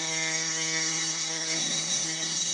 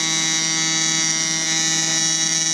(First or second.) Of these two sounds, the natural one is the second